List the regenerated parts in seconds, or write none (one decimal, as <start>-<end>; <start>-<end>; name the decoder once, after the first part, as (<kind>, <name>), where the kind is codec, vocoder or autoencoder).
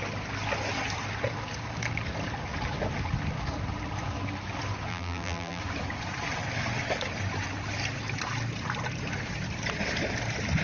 4.9-5.6 (vocoder, BigVGAN v2)